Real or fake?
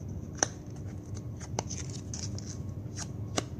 real